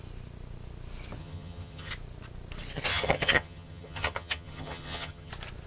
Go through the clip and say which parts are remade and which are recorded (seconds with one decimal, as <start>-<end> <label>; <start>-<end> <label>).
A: 0.0-1.2 recorded; 1.2-1.9 remade; 1.9-2.9 recorded; 2.9-5.3 remade; 5.3-5.7 recorded